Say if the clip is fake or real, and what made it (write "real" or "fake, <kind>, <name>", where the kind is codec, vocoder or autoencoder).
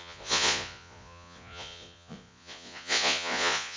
fake, vocoder, Vocos